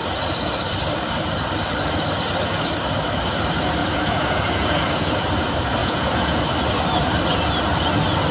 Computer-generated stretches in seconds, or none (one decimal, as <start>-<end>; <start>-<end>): 3.8-5.1; 5.8-6.4

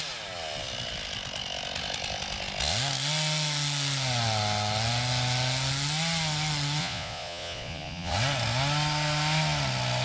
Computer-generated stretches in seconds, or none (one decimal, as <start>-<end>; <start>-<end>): 6.8-8.1

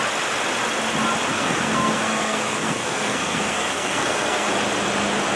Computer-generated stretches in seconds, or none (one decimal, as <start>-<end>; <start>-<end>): 1.3-4.5

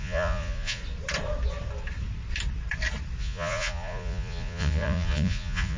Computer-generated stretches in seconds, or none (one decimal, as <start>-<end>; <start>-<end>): 0.0-0.8; 3.2-5.8